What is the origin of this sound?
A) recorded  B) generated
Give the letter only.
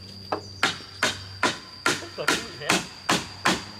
A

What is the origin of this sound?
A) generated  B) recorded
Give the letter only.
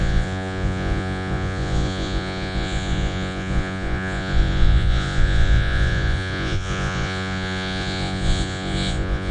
A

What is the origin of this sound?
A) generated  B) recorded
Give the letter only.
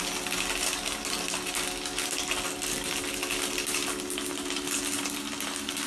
B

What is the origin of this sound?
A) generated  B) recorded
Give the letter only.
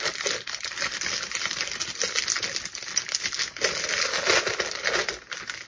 B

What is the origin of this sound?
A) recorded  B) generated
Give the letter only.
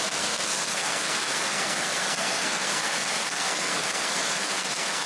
B